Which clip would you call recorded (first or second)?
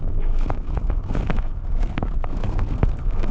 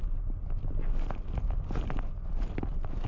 second